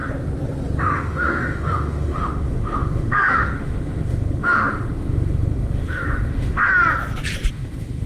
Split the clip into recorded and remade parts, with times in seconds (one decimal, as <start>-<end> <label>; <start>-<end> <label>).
0.0-0.8 recorded; 0.8-6.7 remade; 6.7-7.5 recorded; 7.5-8.1 remade